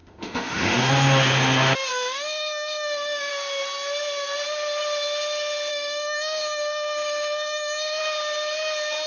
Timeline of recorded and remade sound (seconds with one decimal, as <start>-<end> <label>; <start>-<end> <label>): 0.0-0.9 remade; 0.9-1.9 recorded; 1.9-3.3 remade; 3.3-5.7 recorded; 5.7-8.0 remade; 8.0-9.1 recorded